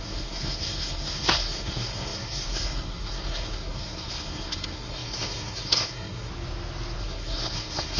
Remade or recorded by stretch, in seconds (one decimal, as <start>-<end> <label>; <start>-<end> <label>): 0.0-6.3 remade; 6.3-7.0 recorded; 7.0-8.0 remade